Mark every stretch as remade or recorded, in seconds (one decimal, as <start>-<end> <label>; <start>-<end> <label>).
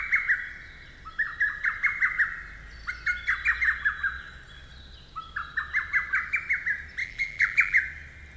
0.0-7.0 recorded; 7.0-7.8 remade; 7.8-8.4 recorded